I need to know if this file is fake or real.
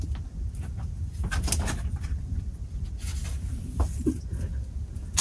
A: real